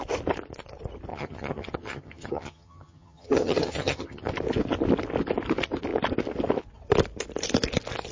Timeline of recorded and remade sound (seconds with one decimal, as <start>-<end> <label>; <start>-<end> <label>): 0.0-1.1 recorded; 1.1-4.3 remade; 4.3-8.1 recorded